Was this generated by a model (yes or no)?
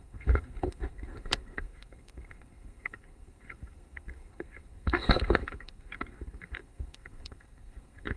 yes